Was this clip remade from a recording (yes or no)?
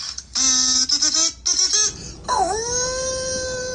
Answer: no